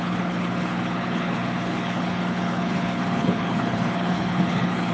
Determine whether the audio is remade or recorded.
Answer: remade